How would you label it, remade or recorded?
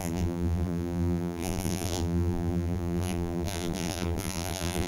remade